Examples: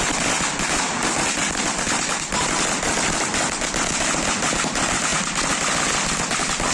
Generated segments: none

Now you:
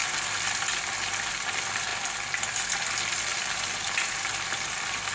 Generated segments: 0.0-0.7 (vocoder, BigVGAN v2); 1.9-2.4; 3.3-5.1

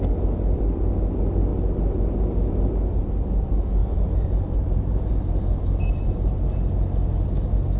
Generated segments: 3.8-6.1 (vocoder, BigVGAN v2)

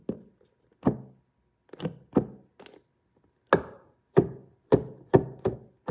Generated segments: none